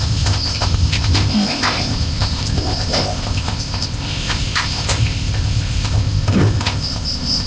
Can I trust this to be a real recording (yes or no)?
no